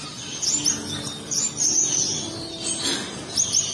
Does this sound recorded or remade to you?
recorded